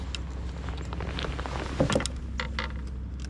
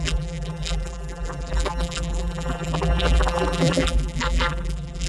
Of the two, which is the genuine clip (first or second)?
first